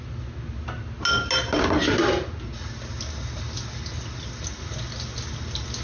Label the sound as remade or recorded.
recorded